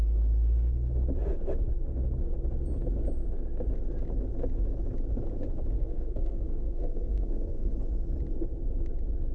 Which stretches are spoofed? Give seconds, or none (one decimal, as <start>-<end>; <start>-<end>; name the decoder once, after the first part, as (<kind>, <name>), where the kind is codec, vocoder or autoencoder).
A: 5.8-7.7 (codec, SNAC)